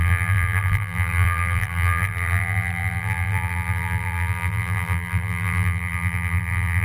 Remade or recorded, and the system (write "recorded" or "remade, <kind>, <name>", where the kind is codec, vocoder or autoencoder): remade, vocoder, BigVGAN v2